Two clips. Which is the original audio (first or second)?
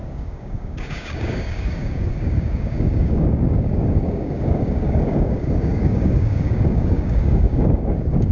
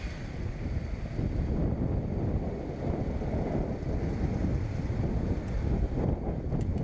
second